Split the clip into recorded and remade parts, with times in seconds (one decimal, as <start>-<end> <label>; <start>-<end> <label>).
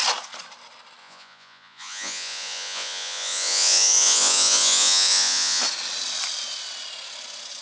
0.0-1.0 recorded; 1.0-5.6 remade; 5.6-7.6 recorded